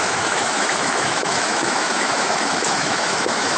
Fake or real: fake